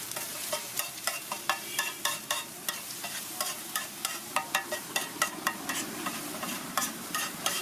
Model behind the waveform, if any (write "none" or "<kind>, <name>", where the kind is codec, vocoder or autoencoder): vocoder, BigVGAN v2